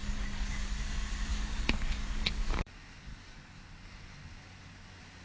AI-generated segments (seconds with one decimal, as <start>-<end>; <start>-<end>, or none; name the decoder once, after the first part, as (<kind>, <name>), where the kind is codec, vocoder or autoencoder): 0.0-0.8 (codec, DAC); 1.3-2.7; 3.1-3.6